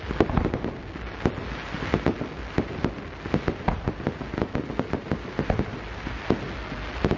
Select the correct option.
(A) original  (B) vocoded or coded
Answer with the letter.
A